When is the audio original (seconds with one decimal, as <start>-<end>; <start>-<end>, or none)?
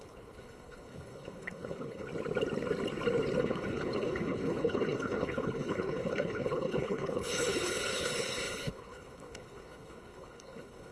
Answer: 2.1-3.4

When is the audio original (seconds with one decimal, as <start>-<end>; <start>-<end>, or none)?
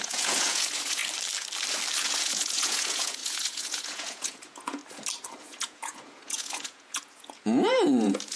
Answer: 1.0-2.0; 4.8-5.4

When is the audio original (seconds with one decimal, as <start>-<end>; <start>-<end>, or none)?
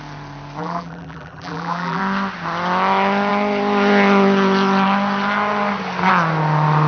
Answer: 0.0-0.6; 2.0-6.9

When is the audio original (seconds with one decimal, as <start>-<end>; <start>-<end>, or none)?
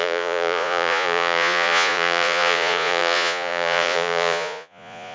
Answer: none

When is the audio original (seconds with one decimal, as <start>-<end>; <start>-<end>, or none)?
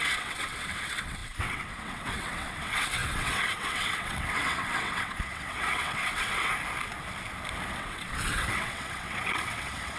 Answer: 6.5-7.7